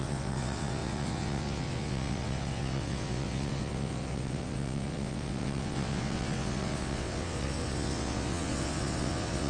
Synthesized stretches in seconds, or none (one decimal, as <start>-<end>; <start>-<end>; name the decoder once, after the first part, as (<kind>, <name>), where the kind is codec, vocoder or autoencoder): 0.0-9.5 (vocoder, WaveNeXt)